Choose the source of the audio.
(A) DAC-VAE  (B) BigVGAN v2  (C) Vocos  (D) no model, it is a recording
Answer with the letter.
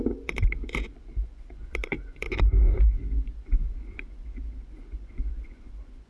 C